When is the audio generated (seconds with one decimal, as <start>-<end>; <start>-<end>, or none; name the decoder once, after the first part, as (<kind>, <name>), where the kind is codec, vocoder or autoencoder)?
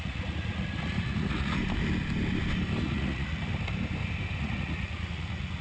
0.0-1.6 (vocoder, Vocos); 2.8-3.5; 4.4-5.6